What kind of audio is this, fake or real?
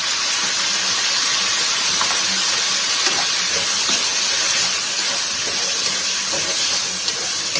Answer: real